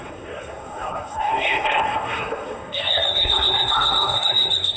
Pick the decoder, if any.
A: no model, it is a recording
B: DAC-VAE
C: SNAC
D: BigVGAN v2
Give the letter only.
C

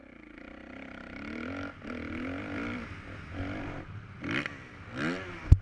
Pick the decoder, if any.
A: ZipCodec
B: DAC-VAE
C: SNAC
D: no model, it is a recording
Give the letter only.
D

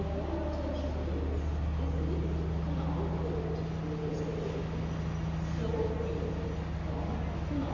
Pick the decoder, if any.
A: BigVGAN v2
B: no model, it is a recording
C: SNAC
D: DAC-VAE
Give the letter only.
B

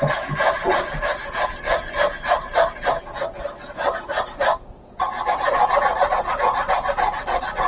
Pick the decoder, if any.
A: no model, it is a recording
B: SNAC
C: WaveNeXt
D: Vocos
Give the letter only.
A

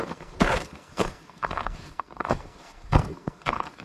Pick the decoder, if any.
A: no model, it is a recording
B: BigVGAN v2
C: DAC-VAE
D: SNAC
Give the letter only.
D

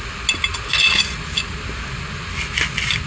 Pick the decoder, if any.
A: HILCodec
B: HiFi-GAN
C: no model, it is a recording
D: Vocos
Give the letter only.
C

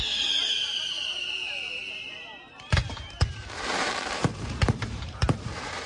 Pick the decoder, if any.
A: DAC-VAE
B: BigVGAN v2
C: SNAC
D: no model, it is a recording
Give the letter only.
B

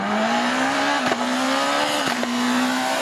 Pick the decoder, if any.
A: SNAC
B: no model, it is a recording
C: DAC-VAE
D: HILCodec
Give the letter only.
B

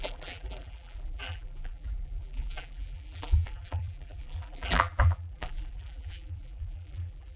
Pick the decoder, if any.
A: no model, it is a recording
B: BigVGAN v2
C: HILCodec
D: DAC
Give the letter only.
B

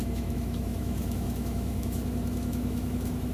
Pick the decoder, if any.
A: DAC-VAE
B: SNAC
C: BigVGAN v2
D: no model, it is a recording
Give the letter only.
A